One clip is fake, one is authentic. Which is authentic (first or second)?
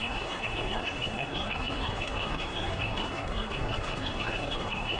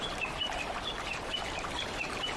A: second